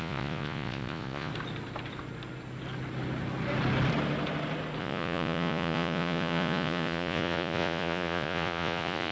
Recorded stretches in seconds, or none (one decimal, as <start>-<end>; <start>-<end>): 1.3-4.8